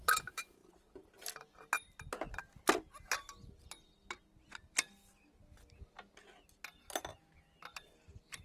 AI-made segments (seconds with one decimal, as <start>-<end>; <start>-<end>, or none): none